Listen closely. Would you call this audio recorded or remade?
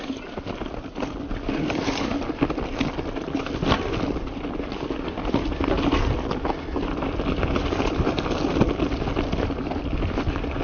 recorded